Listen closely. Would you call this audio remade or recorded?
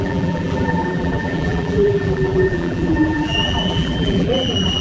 remade